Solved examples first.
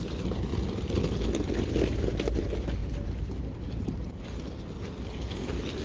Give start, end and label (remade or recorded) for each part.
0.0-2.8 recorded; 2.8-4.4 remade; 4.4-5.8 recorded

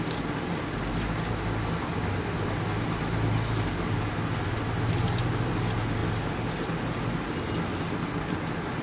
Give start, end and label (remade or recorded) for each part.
0.0-8.8 recorded

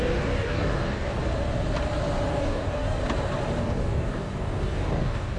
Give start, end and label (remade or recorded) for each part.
0.0-1.2 remade; 1.2-2.3 recorded; 2.3-3.0 remade; 3.0-3.6 recorded; 3.6-5.4 remade

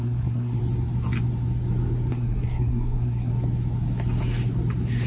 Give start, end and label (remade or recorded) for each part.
0.0-0.6 remade; 0.6-2.1 recorded; 2.1-3.3 remade; 3.3-5.1 recorded

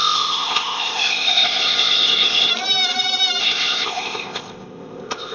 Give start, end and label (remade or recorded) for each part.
0.0-2.5 remade; 2.5-3.4 recorded; 3.4-5.3 remade

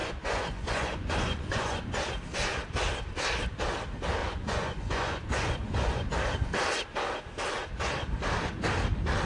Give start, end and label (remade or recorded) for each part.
0.0-2.0 remade; 2.0-4.2 recorded; 4.2-6.1 remade; 6.1-9.3 recorded